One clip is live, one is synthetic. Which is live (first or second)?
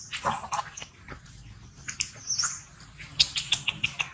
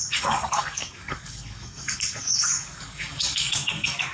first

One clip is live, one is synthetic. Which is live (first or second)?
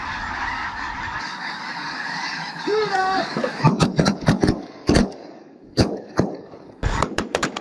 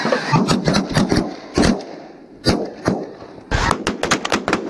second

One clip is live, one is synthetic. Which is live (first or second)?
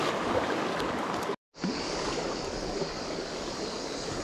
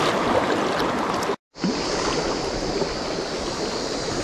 second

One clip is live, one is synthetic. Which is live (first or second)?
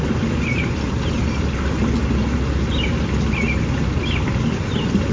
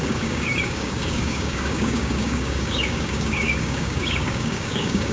first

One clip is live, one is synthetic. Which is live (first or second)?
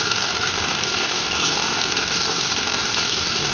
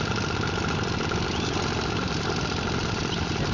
second